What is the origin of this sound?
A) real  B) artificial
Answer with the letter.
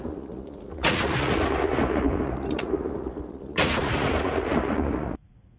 B